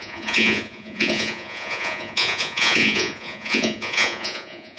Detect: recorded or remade remade